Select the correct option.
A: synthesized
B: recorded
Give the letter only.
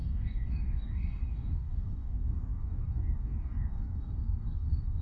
A